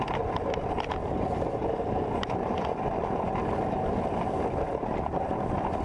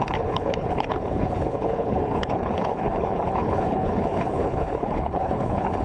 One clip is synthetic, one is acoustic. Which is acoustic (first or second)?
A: first